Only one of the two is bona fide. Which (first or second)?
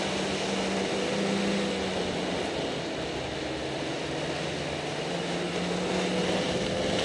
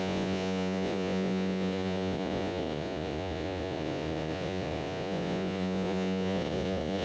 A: first